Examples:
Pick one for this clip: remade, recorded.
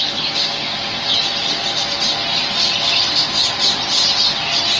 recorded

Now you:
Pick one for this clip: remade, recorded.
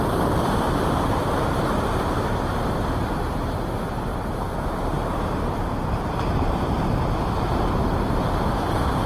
remade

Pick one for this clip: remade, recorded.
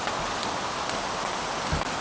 recorded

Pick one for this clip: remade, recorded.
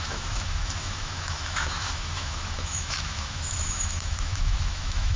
remade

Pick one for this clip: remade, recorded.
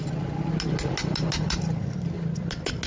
recorded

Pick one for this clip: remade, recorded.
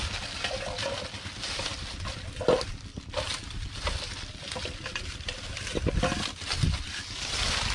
recorded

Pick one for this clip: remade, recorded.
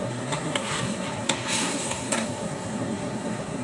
remade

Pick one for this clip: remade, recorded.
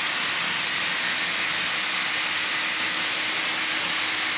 recorded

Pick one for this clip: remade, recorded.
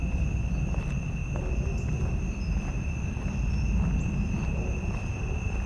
recorded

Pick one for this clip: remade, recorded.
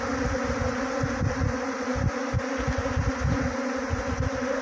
recorded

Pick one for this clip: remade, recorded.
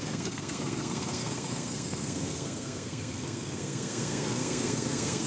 remade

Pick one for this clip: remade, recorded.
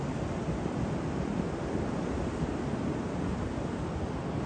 recorded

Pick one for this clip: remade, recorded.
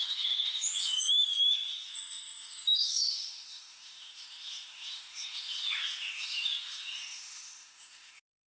remade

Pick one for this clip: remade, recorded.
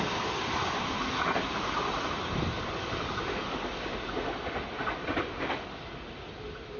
recorded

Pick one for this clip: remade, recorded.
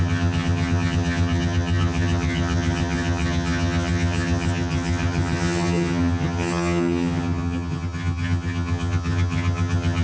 remade